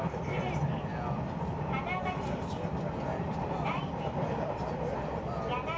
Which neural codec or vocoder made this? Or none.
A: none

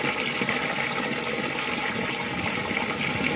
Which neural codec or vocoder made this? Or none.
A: none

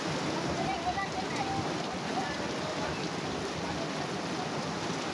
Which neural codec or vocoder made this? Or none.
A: none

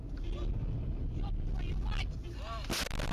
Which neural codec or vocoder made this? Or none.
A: none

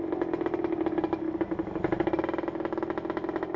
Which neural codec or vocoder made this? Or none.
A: none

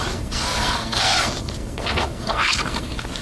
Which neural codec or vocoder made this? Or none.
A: codec, SNAC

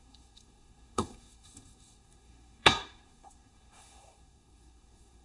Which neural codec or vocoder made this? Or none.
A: codec, SNAC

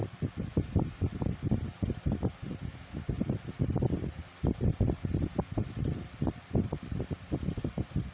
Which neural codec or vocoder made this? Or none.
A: none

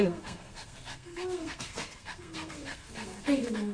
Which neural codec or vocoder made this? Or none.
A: codec, SNAC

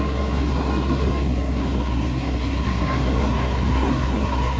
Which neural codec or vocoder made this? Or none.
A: codec, SNAC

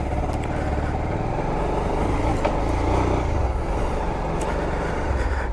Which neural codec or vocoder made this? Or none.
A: none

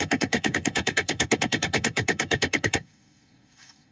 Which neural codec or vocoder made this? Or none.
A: codec, SNAC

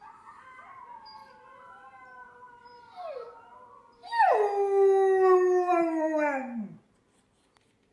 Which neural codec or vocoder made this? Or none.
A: none